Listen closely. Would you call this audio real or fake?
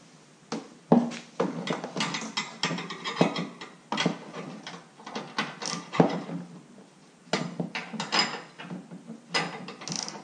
real